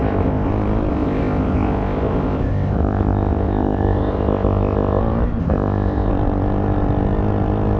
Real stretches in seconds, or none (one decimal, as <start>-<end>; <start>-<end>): 0.5-0.9; 5.0-5.4; 6.1-7.8

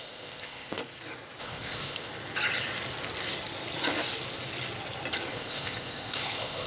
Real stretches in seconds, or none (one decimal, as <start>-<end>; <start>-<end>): 0.8-1.4; 2.1-5.3